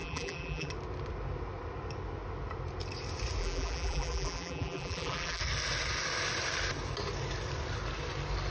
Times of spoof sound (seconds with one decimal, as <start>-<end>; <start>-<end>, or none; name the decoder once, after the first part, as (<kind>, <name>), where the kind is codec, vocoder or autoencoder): 0.0-0.7 (vocoder, BigVGAN v2); 3.4-5.4